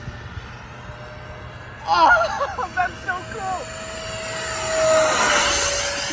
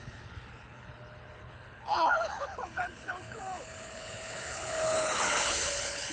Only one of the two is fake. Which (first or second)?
second